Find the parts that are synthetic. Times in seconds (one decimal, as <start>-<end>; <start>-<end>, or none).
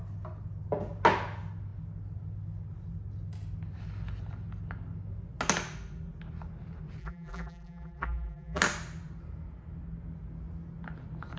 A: 7.0-8.6